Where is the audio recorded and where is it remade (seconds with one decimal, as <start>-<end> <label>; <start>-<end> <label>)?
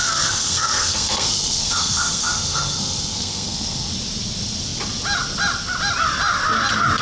0.0-3.9 remade; 3.9-7.0 recorded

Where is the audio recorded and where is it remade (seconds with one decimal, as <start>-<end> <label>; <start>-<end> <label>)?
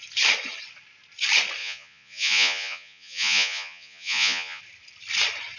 0.0-1.6 recorded; 1.6-4.6 remade; 4.6-5.6 recorded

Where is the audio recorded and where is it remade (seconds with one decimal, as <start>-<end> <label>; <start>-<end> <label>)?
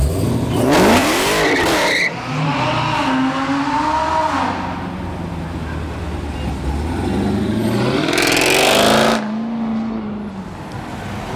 0.0-1.0 recorded; 1.0-2.7 remade; 2.7-11.4 recorded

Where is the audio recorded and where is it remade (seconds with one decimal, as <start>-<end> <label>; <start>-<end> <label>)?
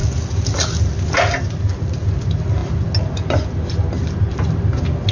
0.0-5.1 recorded